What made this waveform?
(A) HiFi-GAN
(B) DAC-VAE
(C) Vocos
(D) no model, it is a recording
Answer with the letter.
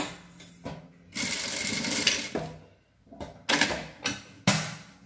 D